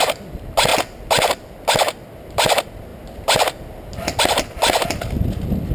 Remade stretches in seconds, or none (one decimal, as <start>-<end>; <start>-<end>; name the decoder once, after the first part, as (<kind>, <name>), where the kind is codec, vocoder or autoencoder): none